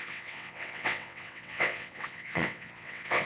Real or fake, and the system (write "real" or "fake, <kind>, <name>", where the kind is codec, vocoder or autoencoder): fake, vocoder, WaveNeXt